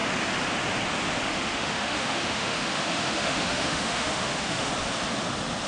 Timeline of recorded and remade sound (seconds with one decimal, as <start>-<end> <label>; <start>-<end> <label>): 0.0-1.3 recorded; 1.3-4.7 remade; 4.7-5.7 recorded